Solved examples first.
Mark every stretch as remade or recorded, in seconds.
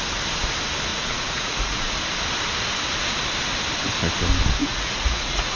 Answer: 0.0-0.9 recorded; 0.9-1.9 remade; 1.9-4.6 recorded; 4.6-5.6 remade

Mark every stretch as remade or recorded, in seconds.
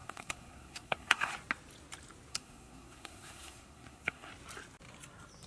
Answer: 0.0-1.3 remade; 1.3-2.3 recorded; 2.3-4.3 remade; 4.3-5.5 recorded